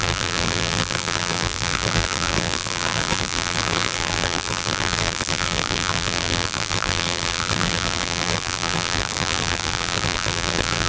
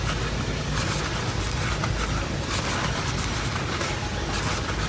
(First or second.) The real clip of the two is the second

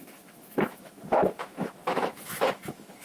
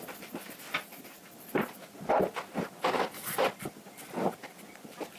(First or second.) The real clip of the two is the second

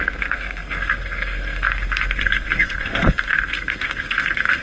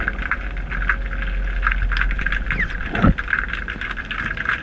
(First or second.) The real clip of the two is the second